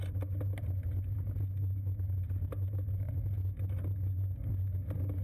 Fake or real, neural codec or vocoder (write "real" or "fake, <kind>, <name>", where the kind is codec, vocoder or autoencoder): real